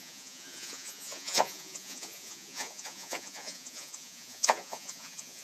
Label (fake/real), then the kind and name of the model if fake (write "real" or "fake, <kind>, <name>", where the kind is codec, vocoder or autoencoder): fake, vocoder, Vocos